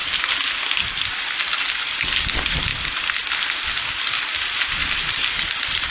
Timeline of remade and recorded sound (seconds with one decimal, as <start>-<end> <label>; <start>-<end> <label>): 0.0-5.9 recorded